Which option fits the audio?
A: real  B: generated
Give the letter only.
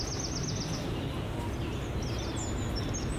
A